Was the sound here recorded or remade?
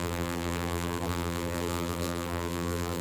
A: remade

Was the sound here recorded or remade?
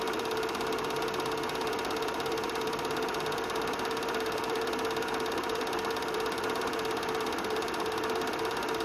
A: remade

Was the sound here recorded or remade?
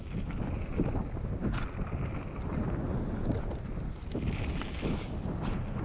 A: recorded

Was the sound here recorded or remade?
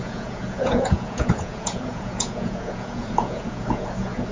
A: remade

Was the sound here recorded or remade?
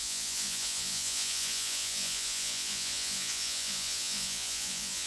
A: remade